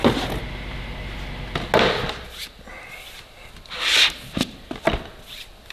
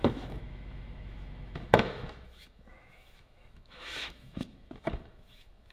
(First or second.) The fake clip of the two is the second